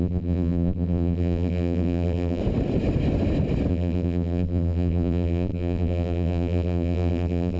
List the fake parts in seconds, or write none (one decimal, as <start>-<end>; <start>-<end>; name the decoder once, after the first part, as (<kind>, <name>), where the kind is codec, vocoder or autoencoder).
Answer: 0.0-2.4 (vocoder, BigVGAN v2); 3.7-7.6